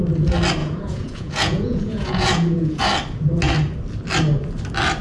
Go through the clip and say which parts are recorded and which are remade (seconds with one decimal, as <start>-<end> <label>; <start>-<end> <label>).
0.0-0.6 recorded; 0.6-2.8 remade; 2.8-5.0 recorded